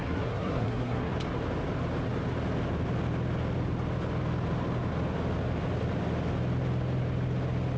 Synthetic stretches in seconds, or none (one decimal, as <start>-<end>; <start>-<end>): 0.0-1.1